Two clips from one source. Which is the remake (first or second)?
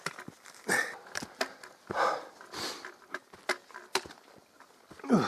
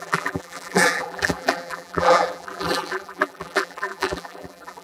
second